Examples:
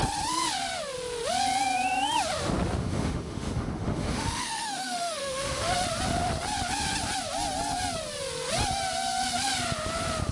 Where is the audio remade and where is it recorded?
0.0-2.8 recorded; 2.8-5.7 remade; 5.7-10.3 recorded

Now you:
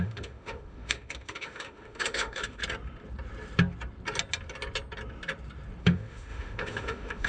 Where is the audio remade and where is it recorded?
0.0-2.6 remade; 2.6-5.8 recorded; 5.8-7.3 remade

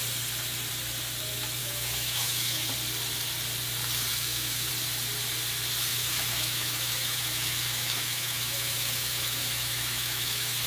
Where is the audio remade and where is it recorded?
0.0-1.6 recorded; 1.6-2.7 remade; 2.7-4.1 recorded; 4.1-4.7 remade; 4.7-5.9 recorded; 5.9-10.7 remade

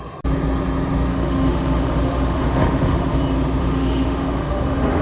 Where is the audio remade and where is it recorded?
0.0-1.1 recorded; 1.1-3.2 remade; 3.2-3.6 recorded; 3.6-5.0 remade

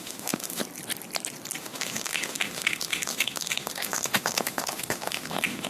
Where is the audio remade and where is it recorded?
0.0-0.6 remade; 0.6-1.6 recorded; 1.6-5.7 remade

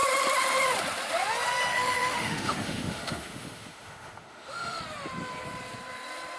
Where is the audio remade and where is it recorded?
0.0-1.7 recorded; 1.7-4.8 remade; 4.8-6.4 recorded

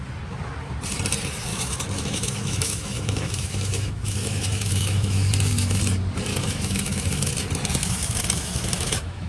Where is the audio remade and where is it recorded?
0.0-1.5 recorded; 1.5-5.8 remade; 5.8-6.3 recorded; 6.3-7.3 remade; 7.3-7.8 recorded; 7.8-9.3 remade

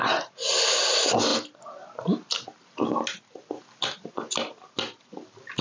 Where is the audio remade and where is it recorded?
0.0-5.6 recorded